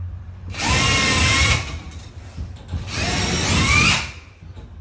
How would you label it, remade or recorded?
remade